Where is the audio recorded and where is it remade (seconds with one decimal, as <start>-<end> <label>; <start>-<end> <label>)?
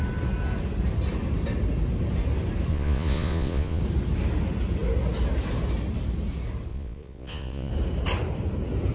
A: 0.0-2.7 recorded; 2.7-3.8 remade; 3.8-6.7 recorded; 6.7-7.7 remade; 7.7-8.9 recorded